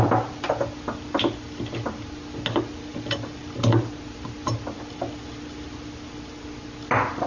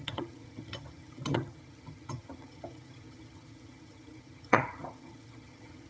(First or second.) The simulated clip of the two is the second